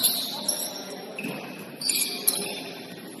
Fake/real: real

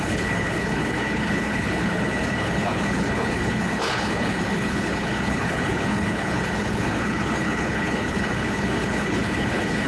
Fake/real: fake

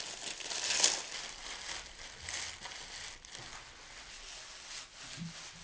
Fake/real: real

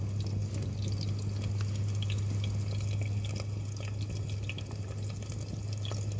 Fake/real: real